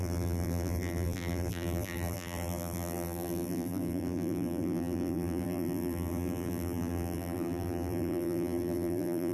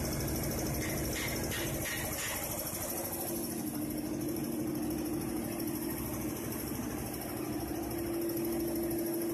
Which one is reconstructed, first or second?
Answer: first